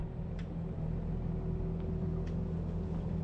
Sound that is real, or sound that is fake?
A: real